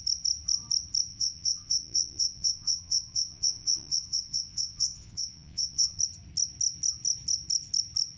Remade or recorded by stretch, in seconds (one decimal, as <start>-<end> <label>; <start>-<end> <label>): 0.0-1.1 recorded; 1.1-6.0 remade; 6.0-8.2 recorded